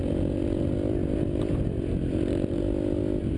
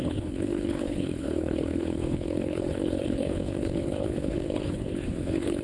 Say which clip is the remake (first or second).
second